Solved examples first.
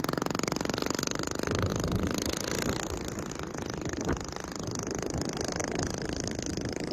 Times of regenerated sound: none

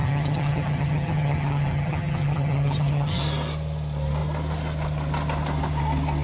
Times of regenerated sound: 0.0-3.2 (vocoder, HiFi-GAN)